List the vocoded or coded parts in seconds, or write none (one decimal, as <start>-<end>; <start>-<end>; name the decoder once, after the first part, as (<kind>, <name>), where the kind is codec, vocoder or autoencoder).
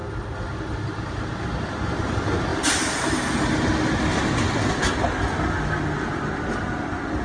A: none